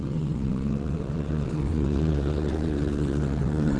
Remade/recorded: remade